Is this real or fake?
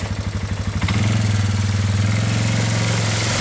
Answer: real